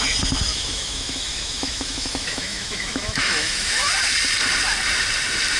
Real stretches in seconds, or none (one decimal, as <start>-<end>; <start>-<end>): 0.0-0.5; 3.9-5.6